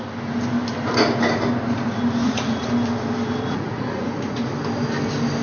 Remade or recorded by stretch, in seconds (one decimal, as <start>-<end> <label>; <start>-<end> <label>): 0.0-2.2 recorded; 2.2-2.7 remade; 2.7-3.5 recorded; 3.5-4.5 remade; 4.5-5.4 recorded